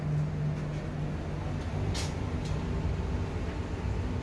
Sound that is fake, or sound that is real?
real